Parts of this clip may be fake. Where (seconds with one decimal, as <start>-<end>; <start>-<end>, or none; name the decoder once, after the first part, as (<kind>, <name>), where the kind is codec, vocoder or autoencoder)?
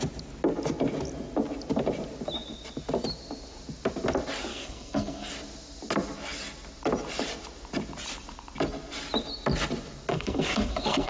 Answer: 4.5-5.3 (codec, SNAC); 10.1-11.1